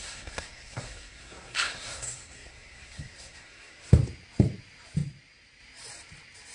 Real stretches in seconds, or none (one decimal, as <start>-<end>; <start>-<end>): 3.9-6.5